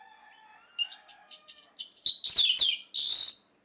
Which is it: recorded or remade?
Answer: recorded